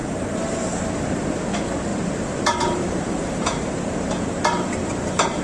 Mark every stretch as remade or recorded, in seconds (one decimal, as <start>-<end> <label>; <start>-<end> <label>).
0.0-0.8 remade; 0.8-1.9 recorded; 1.9-5.4 remade